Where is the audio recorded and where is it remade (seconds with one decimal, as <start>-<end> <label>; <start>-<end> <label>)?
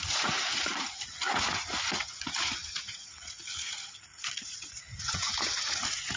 0.0-6.2 remade